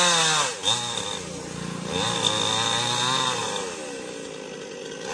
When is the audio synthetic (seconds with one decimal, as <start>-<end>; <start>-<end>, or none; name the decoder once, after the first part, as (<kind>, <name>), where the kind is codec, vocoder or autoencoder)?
none

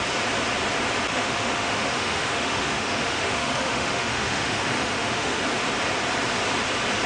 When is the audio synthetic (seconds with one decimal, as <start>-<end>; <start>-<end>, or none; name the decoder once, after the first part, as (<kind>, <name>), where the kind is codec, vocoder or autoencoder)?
1.1-5.4 (autoencoder, DAC-VAE)